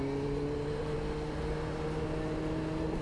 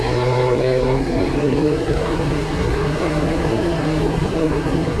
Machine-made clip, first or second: second